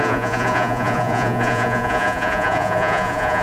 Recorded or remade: remade